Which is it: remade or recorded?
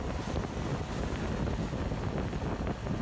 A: recorded